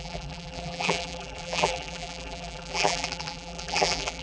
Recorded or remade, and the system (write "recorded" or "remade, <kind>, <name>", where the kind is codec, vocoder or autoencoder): remade, vocoder, BigVGAN v2